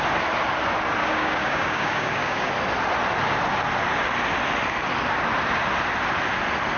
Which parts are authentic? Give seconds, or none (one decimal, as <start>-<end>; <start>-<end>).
0.0-1.0; 2.5-6.8